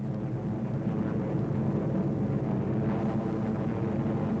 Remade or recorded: recorded